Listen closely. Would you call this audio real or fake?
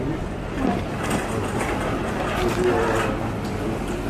real